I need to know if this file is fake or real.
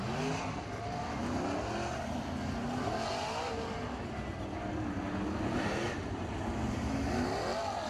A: real